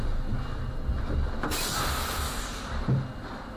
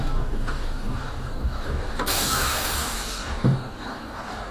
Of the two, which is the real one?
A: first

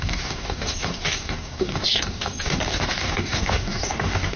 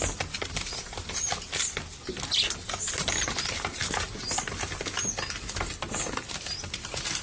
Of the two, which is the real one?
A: second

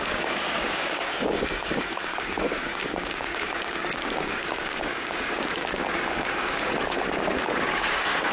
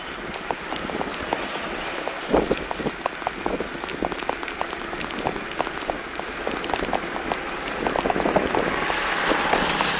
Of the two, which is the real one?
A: second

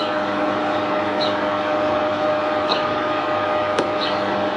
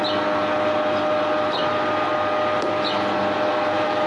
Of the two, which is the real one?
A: second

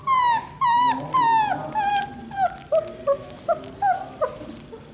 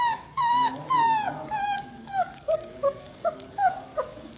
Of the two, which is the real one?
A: first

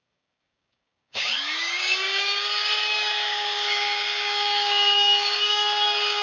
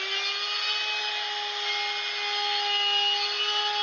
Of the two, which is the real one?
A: second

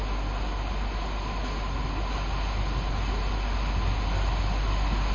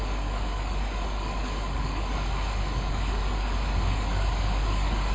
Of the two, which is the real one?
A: first